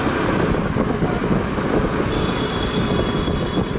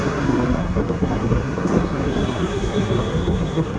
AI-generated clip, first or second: second